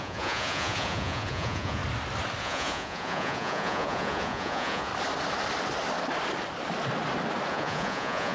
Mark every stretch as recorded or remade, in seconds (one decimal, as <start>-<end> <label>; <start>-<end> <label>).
0.0-1.8 remade; 1.8-2.4 recorded; 2.4-4.9 remade; 4.9-7.5 recorded; 7.5-8.3 remade